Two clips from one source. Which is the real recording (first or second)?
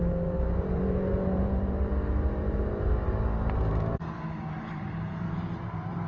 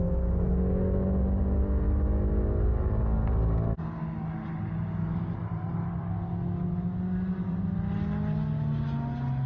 second